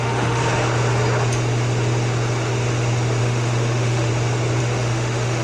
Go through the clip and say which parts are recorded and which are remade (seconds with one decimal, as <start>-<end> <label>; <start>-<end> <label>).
0.0-0.4 remade; 0.4-3.2 recorded; 3.2-4.1 remade; 4.1-4.6 recorded; 4.6-5.4 remade